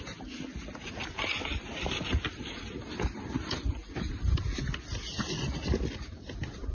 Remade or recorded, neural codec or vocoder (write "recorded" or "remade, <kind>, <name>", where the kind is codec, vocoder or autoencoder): recorded